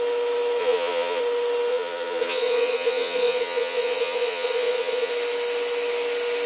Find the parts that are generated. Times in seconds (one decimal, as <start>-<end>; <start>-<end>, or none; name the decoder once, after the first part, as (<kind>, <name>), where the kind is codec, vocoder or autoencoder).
0.6-1.2 (vocoder, Vocos); 1.7-5.1